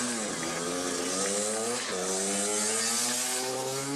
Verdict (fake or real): real